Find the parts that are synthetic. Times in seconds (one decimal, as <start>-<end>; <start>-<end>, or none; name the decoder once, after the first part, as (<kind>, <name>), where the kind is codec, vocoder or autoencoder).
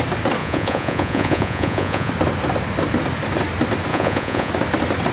0.4-2.1 (vocoder, Vocos); 3.9-4.5